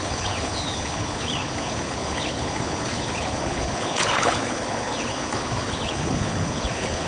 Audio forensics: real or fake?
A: fake